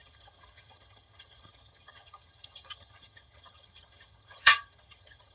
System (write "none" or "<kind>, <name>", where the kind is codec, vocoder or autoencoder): vocoder, HiFi-GAN